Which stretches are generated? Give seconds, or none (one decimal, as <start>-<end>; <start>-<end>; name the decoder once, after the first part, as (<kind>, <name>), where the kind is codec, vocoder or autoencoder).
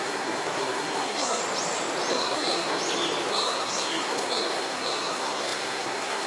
0.0-1.4 (codec, SNAC); 2.1-2.8; 3.3-6.3